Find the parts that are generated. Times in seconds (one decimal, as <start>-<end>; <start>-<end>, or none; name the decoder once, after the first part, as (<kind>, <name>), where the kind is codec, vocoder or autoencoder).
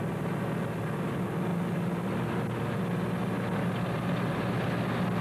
none